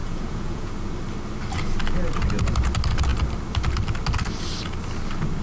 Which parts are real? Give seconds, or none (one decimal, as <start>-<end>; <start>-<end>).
0.7-5.4